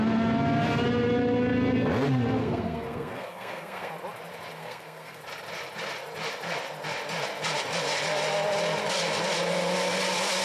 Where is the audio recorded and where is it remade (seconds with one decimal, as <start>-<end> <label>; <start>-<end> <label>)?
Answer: 0.0-2.4 recorded; 2.4-3.9 remade; 3.9-4.6 recorded; 4.6-5.2 remade; 5.2-10.4 recorded